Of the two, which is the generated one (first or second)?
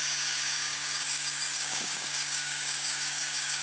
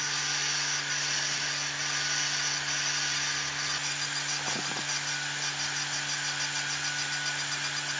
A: first